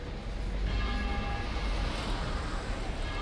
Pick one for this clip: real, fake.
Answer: real